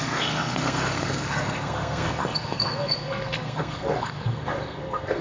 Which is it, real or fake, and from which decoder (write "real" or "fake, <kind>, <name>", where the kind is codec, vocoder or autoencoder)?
fake, codec, SNAC